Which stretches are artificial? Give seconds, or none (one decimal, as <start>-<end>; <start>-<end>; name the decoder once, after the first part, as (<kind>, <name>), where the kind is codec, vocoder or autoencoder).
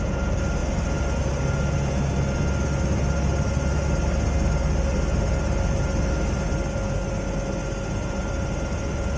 none